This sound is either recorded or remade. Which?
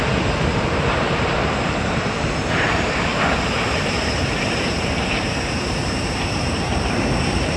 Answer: remade